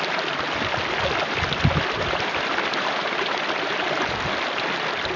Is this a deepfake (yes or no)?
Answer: no